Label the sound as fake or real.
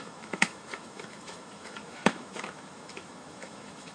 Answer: fake